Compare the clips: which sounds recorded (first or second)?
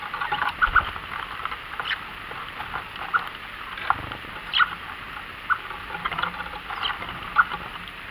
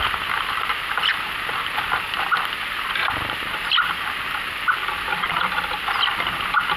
first